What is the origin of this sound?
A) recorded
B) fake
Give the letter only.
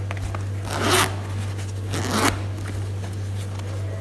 A